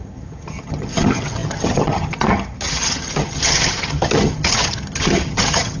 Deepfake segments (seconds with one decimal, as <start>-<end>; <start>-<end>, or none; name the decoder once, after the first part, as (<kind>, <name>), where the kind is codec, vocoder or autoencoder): 0.0-5.8 (vocoder, HiFi-GAN)